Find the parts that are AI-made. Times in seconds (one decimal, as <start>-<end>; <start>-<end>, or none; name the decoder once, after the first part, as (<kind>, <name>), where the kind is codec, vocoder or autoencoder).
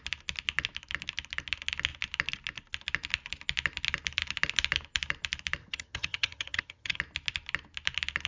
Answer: 5.6-7.0 (vocoder, HiFi-GAN)